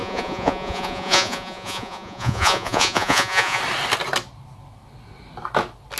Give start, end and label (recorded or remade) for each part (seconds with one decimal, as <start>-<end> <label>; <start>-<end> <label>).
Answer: 0.0-3.6 remade; 3.6-6.0 recorded